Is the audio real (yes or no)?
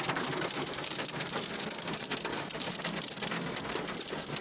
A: yes